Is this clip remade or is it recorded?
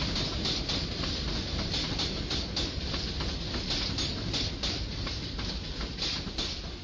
recorded